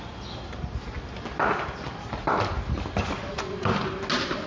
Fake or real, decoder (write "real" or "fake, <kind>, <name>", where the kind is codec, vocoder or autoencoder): real